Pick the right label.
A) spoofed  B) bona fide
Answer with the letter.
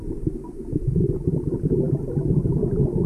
B